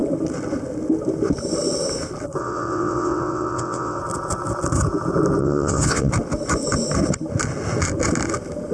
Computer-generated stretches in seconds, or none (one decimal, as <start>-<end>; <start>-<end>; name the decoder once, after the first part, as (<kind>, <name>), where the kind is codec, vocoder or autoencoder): 2.4-4.0 (vocoder, WaveNeXt); 5.4-6.1